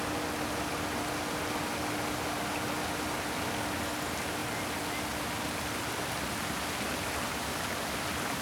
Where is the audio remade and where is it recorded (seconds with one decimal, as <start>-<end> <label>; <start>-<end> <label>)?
0.0-8.4 recorded